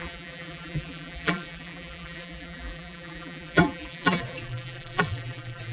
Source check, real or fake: fake